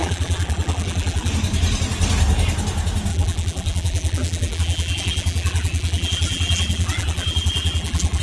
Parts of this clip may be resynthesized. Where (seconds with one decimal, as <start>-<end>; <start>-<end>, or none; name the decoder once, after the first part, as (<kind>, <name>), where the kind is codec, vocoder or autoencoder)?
0.0-1.3 (vocoder, BigVGAN v2); 3.1-8.2